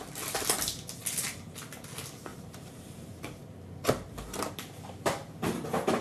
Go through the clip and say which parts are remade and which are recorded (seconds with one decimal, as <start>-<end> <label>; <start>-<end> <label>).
0.0-2.3 recorded; 2.3-3.4 remade; 3.4-6.0 recorded